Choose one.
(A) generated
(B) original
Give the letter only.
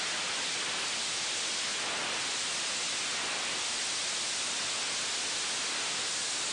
B